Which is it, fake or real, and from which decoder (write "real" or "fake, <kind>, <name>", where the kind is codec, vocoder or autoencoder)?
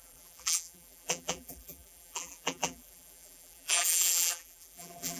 fake, vocoder, BigVGAN v2